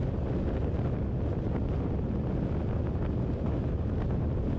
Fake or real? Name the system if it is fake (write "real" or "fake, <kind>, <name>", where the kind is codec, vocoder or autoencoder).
real